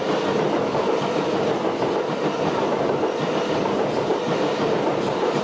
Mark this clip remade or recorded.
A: recorded